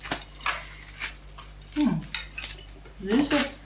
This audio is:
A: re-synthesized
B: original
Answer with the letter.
B